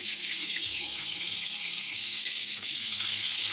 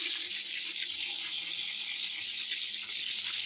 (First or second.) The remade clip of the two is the first